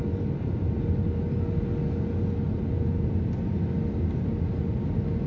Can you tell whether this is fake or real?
real